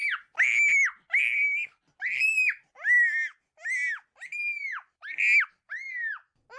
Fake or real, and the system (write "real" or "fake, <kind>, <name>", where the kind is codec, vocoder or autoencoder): real